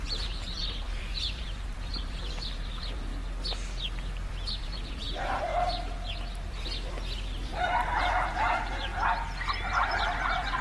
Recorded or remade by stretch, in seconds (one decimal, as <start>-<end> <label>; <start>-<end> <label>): 0.0-3.1 remade; 3.1-4.6 recorded; 4.6-5.5 remade; 5.5-6.9 recorded; 6.9-8.9 remade; 8.9-9.8 recorded; 9.8-10.6 remade